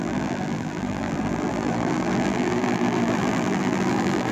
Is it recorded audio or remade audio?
remade